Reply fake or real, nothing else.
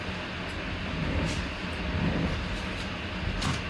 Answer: real